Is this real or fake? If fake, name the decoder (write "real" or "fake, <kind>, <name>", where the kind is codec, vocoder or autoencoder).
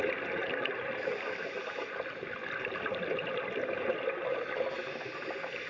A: real